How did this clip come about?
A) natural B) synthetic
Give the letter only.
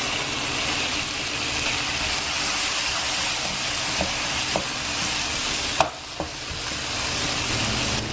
A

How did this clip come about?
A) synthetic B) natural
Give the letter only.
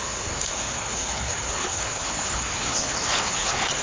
A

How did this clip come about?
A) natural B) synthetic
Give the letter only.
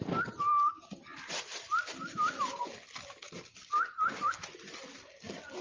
A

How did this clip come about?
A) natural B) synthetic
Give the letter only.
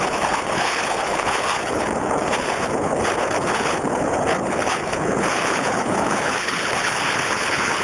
B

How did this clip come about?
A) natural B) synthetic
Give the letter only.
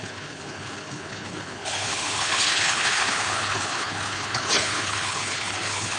B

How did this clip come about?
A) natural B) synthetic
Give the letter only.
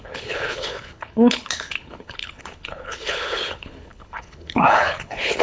B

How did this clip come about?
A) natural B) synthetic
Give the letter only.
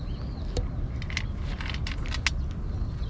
A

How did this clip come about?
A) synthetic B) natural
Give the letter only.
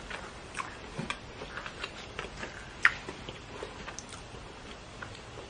B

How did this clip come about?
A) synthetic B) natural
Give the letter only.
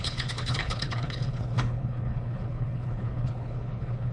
A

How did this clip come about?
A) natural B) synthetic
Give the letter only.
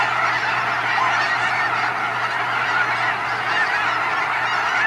A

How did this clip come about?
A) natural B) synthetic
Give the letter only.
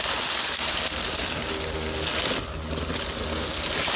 A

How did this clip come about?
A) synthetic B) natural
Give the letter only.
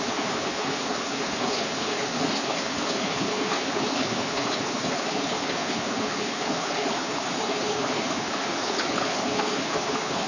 A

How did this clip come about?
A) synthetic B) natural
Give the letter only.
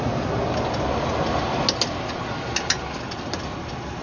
B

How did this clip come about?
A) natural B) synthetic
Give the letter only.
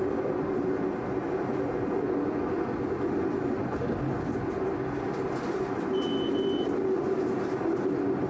A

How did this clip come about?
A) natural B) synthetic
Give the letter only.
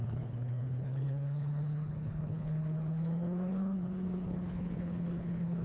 B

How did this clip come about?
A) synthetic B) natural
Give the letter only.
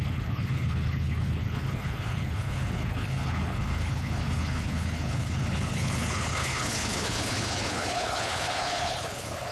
A